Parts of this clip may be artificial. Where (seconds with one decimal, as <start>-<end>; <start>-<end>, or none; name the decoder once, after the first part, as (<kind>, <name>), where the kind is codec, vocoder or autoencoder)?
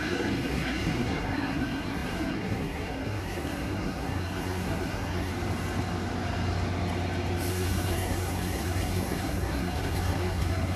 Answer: 0.0-5.3 (codec, SNAC); 7.5-10.8